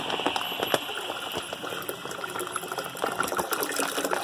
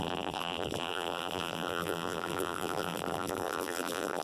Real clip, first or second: first